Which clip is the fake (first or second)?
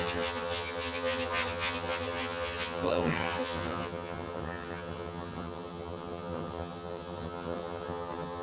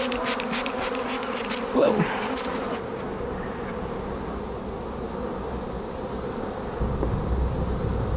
first